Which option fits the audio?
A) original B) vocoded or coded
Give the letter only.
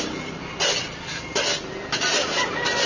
A